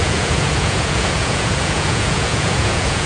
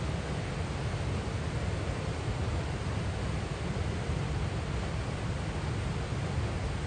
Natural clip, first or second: second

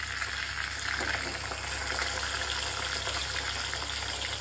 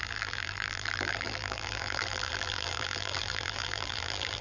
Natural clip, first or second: first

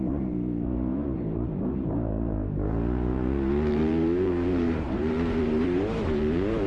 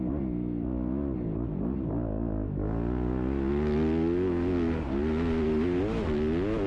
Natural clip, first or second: second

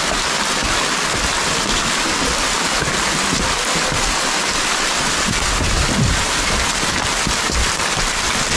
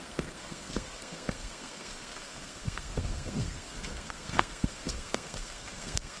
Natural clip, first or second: first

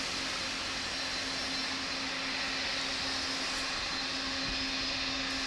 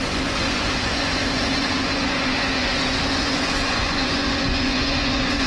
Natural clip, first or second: first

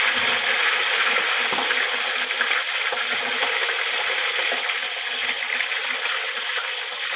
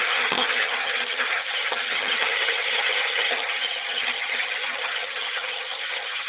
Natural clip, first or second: first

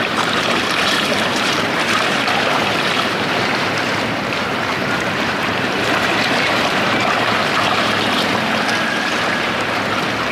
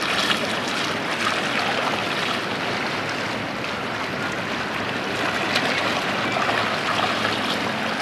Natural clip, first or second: second